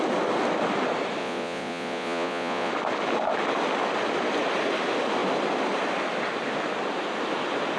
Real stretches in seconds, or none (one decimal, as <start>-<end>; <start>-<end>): 0.0-1.2; 2.7-7.8